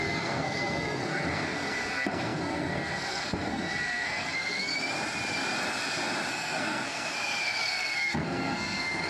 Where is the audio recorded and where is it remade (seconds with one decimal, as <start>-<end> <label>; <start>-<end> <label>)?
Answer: 0.0-4.7 remade; 4.7-6.3 recorded; 6.3-9.1 remade